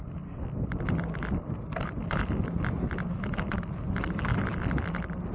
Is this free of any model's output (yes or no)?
yes